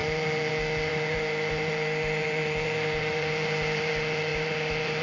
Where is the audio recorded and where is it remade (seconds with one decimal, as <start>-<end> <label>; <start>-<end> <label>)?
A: 0.0-0.5 remade; 0.5-0.9 recorded; 0.9-3.9 remade; 3.9-4.3 recorded; 4.3-5.0 remade